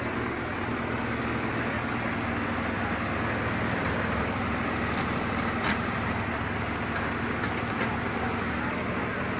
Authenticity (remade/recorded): recorded